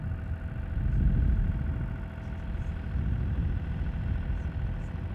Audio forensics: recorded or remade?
recorded